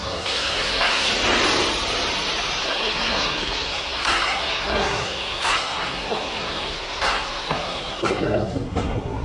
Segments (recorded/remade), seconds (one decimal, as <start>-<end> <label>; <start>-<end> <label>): 0.0-1.1 remade; 1.1-2.6 recorded; 2.6-9.2 remade